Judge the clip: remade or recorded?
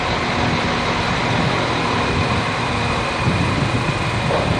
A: recorded